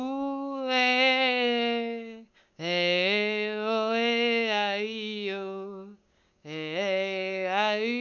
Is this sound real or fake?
fake